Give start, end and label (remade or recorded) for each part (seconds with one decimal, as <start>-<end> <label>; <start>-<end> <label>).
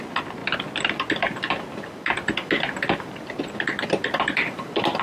0.0-5.0 recorded